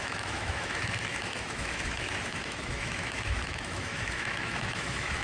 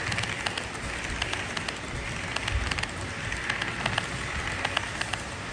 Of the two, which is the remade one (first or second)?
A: first